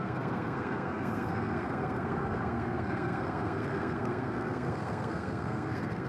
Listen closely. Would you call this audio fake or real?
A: fake